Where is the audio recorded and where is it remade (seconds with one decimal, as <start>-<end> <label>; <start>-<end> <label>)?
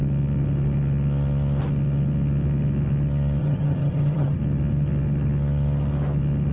0.0-3.4 recorded; 3.4-4.4 remade; 4.4-6.5 recorded